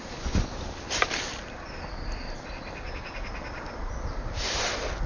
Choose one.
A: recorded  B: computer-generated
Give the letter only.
A